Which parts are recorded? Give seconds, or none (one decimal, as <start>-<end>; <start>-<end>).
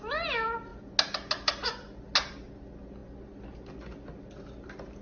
0.0-5.0